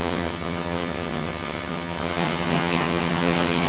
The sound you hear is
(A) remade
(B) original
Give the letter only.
A